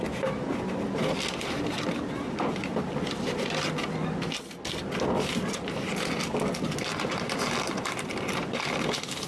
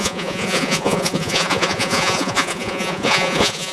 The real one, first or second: first